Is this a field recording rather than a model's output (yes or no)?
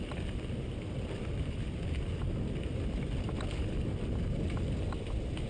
yes